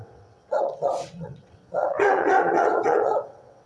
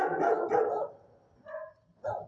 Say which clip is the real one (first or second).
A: second